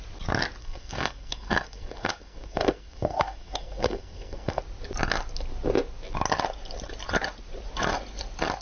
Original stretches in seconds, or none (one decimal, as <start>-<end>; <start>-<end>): 0.0-0.6; 4.6-8.6